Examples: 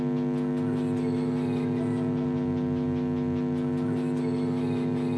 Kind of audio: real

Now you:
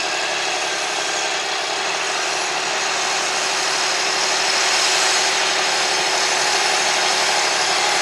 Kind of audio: real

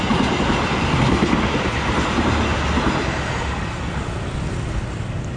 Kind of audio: real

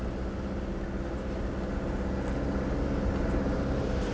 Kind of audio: real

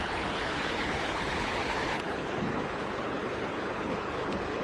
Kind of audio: fake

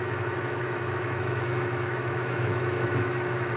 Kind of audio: fake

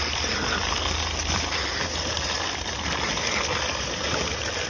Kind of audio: real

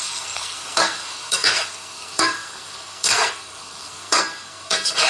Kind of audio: fake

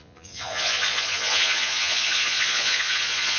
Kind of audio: fake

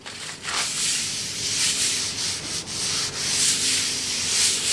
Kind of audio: fake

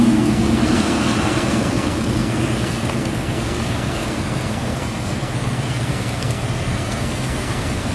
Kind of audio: fake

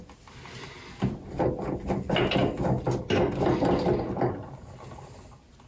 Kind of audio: real